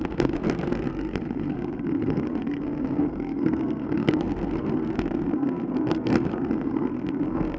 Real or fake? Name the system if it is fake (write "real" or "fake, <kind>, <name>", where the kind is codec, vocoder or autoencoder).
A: fake, codec, SNAC